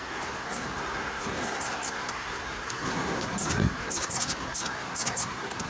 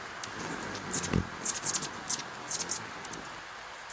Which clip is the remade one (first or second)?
first